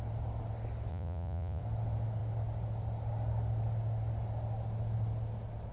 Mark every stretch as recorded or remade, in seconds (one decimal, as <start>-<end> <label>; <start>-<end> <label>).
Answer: 0.0-0.9 recorded; 0.9-1.6 remade; 1.6-5.7 recorded